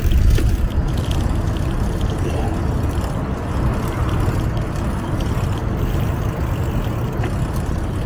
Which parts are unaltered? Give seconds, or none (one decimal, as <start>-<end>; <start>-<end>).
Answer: 0.0-8.1